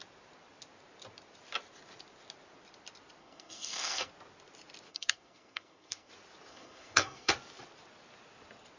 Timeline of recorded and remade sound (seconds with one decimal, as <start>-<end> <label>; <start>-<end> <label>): 0.0-3.2 recorded; 3.2-4.1 remade; 4.1-4.9 recorded; 4.9-6.1 remade; 6.1-6.5 recorded; 6.5-7.3 remade; 7.3-8.8 recorded